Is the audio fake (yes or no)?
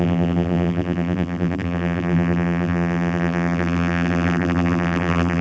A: yes